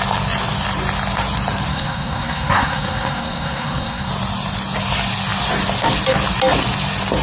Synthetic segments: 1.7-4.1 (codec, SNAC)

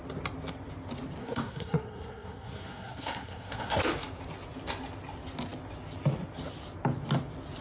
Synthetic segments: 1.2-3.8 (codec, SNAC)

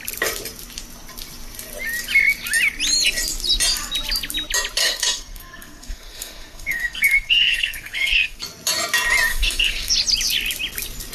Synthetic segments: 4.8-8.4 (codec, SNAC); 9.3-9.9

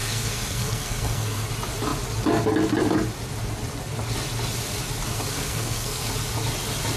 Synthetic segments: 0.0-1.5 (codec, SNAC); 5.1-6.1

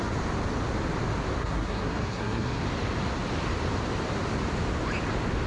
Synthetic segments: 1.4-2.6 (codec, SNAC)

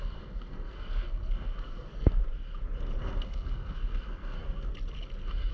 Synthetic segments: 0.0-2.2 (codec, SNAC); 3.0-4.7

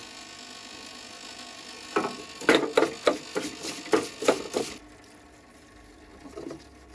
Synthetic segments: none